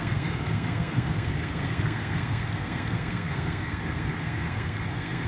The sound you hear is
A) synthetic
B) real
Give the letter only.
A